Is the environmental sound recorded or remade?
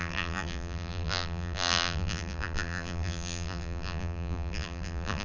remade